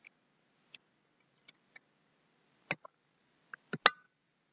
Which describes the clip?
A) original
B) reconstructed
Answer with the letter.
A